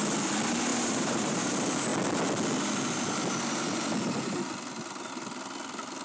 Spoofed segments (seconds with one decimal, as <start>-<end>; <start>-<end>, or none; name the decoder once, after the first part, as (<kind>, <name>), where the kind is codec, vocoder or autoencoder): 0.7-1.5 (vocoder, BigVGAN v2)